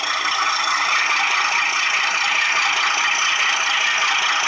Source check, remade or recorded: recorded